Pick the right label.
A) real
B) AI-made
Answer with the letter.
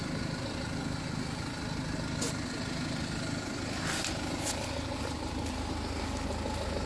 A